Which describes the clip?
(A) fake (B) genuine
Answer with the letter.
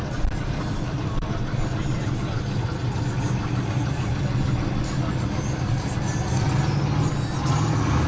B